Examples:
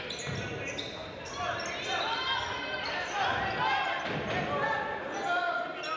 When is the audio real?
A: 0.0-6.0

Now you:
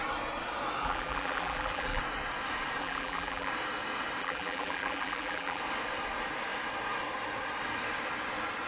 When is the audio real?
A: 0.0-0.8; 2.0-2.8; 3.5-4.2; 5.6-8.7

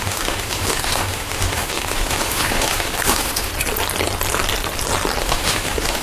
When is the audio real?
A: 3.5-5.2

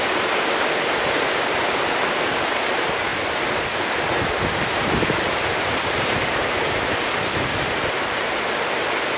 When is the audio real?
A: 0.0-9.2

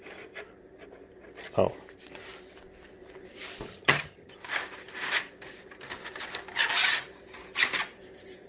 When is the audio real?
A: 0.0-3.7; 4.3-8.5

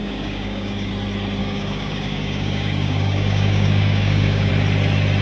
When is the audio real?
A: 0.9-1.4; 4.5-5.2

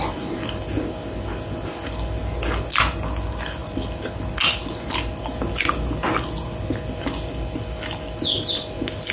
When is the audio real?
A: 0.0-9.1